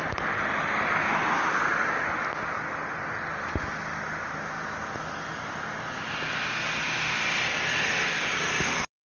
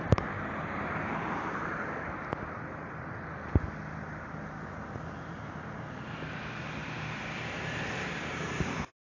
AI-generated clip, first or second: second